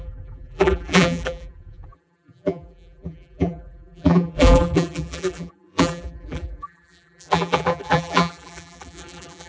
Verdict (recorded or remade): remade